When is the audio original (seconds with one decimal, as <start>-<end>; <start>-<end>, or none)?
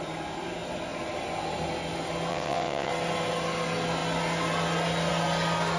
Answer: 0.0-2.3; 2.9-5.8